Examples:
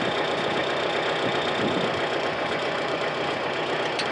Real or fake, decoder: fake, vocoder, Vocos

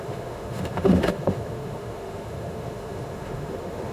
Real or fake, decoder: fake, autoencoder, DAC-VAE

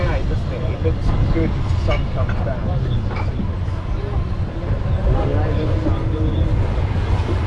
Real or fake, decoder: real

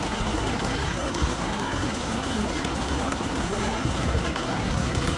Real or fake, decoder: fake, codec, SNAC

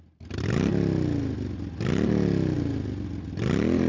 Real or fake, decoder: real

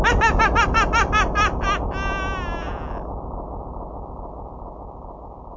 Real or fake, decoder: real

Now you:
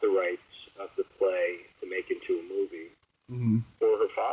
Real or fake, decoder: real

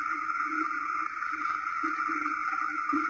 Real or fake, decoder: real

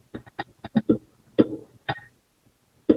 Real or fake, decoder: real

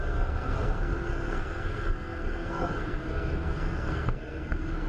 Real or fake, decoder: fake, codec, SNAC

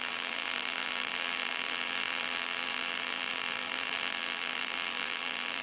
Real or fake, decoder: fake, vocoder, BigVGAN v2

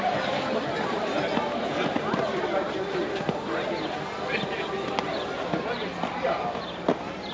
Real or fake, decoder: real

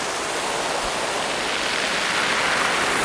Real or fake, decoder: real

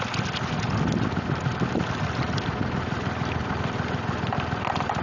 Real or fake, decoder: real